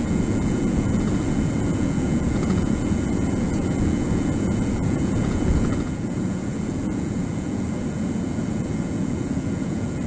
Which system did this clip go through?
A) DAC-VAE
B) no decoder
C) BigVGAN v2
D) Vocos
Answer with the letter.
D